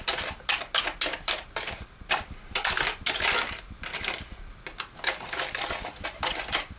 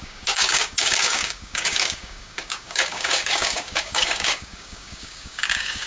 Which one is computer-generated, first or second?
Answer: second